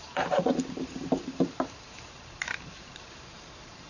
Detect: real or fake fake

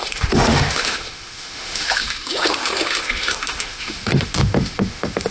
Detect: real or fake fake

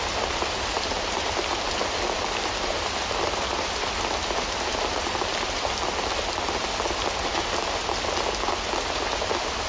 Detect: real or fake real